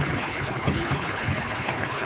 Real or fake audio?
fake